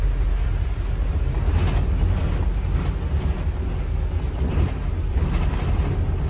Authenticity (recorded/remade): recorded